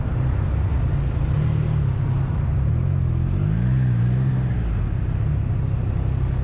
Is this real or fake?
real